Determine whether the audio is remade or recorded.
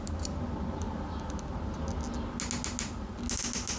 recorded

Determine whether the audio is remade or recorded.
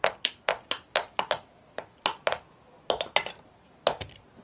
recorded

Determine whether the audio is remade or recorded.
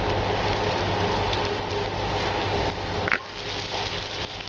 recorded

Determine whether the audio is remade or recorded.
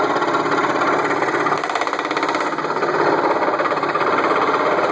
recorded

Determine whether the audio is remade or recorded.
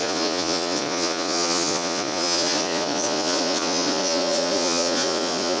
remade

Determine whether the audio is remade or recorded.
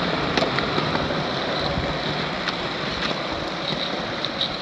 recorded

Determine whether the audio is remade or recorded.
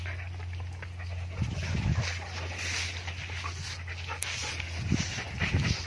recorded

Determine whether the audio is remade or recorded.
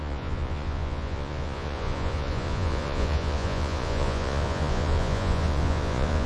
remade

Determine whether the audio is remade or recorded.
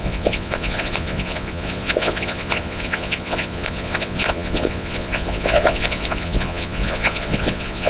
remade